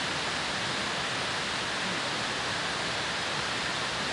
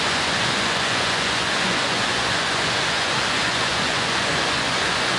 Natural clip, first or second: first